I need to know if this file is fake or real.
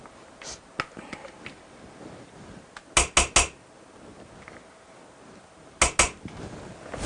real